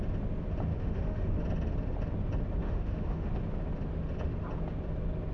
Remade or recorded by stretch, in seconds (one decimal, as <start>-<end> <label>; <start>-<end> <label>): 0.0-0.7 recorded; 0.7-1.4 remade; 1.4-2.6 recorded; 2.6-3.3 remade; 3.3-5.3 recorded